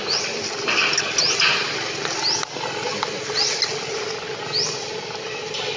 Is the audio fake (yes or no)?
no